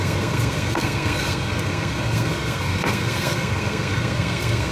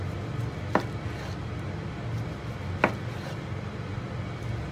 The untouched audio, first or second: second